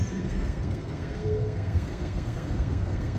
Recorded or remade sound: remade